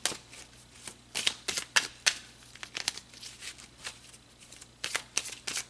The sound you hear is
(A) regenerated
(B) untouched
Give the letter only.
B